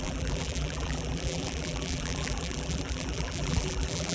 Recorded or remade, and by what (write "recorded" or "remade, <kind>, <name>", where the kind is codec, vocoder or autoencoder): remade, vocoder, BigVGAN v2